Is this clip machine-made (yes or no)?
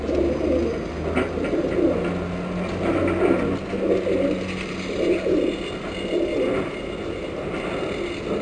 no